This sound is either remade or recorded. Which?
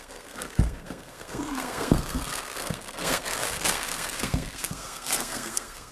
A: remade